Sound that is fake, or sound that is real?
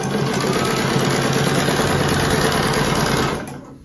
real